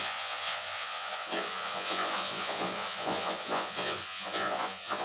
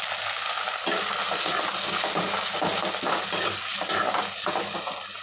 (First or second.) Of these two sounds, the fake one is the first